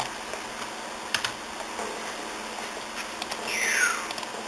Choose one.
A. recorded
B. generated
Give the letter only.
A